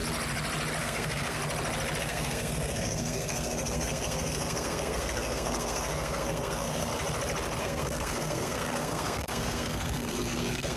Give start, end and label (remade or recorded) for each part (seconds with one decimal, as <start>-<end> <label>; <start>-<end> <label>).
0.0-0.8 recorded; 0.8-1.4 remade; 1.4-2.0 recorded; 2.0-6.9 remade; 6.9-7.6 recorded; 7.6-10.8 remade